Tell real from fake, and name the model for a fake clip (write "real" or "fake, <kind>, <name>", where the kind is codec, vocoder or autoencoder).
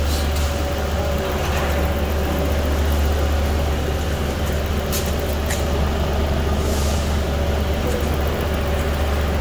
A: real